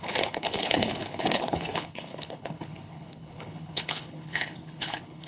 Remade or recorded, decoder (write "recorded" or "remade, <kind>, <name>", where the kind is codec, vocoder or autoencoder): remade, codec, HILCodec